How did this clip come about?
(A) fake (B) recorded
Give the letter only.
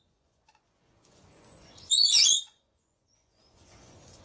A